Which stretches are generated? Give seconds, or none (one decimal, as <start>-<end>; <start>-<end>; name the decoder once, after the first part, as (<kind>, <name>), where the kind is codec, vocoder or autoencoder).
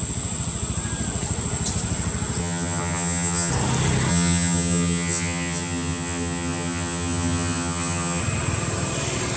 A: 2.4-3.5 (vocoder, HiFi-GAN); 4.1-8.2